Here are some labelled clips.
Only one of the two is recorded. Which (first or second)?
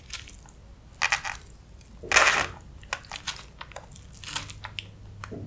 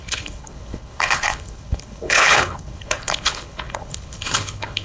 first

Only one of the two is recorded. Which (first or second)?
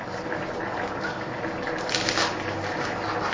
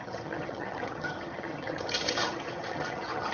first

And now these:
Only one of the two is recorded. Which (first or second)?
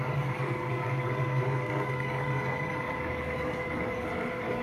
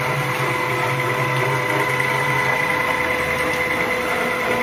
second